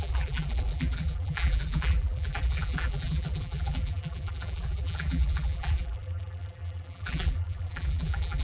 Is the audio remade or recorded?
remade